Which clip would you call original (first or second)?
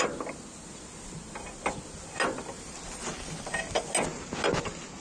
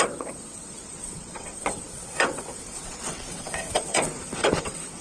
first